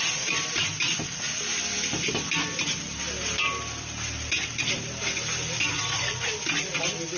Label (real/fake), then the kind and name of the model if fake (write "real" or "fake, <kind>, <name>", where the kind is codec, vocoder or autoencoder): real